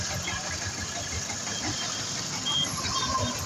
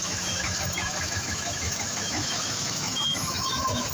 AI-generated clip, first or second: second